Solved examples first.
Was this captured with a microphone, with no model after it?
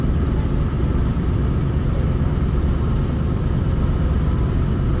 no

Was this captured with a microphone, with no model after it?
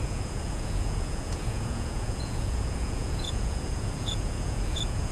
no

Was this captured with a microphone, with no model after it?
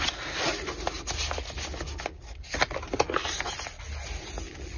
yes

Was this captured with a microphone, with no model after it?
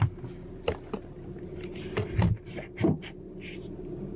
yes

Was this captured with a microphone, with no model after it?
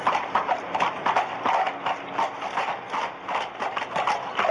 yes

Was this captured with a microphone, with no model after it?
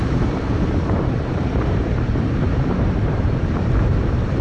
no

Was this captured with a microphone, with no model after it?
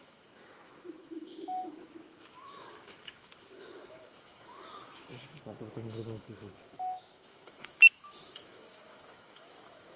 no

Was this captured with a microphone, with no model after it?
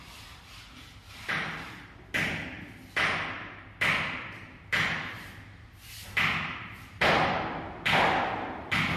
yes